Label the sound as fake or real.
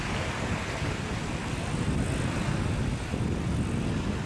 real